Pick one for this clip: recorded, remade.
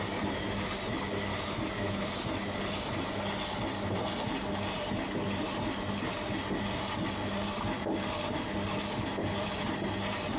recorded